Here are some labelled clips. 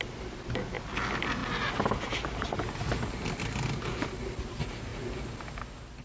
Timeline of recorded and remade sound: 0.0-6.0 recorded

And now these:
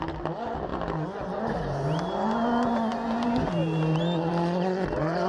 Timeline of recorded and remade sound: 0.0-5.3 recorded